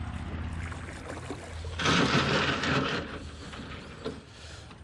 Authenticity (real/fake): real